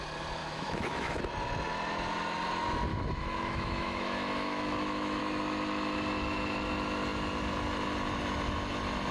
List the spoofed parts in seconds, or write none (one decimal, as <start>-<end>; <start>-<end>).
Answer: 0.4-1.2; 2.9-5.2